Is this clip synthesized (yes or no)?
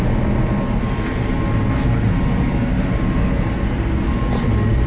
no